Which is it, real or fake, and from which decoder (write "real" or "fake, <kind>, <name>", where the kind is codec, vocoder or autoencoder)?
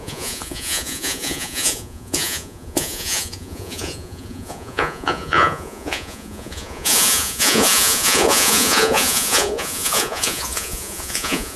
fake, vocoder, Vocos